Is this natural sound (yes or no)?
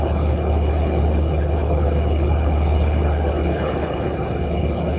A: no